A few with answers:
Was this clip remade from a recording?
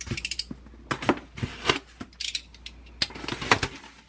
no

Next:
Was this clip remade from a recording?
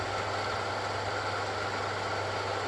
no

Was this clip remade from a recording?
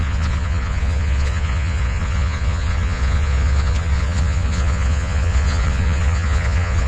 yes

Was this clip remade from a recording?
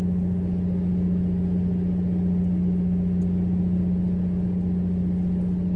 no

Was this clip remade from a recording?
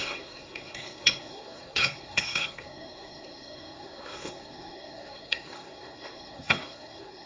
yes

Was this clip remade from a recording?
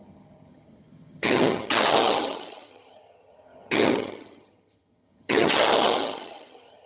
yes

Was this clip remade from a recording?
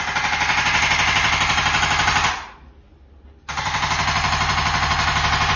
no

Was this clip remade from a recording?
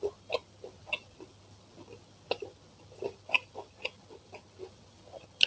no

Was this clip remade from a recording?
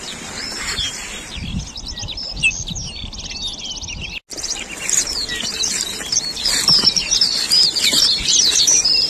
no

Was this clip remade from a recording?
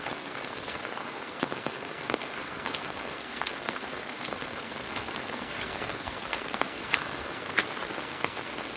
yes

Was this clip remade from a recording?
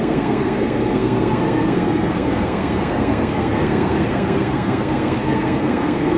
yes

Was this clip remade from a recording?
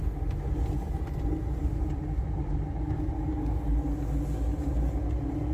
no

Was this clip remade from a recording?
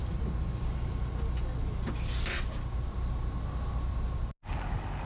no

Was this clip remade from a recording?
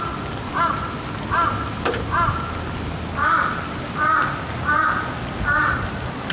no